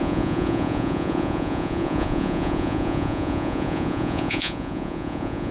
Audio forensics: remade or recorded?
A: remade